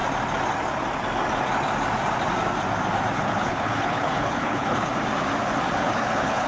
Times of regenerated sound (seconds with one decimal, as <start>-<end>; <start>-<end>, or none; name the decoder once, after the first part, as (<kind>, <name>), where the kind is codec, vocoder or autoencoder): 3.1-4.9 (codec, HILCodec); 5.8-6.5